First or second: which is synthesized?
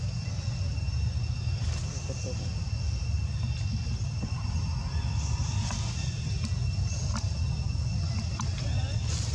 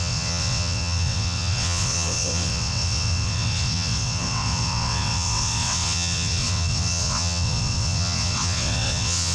second